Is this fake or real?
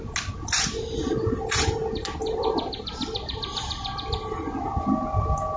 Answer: real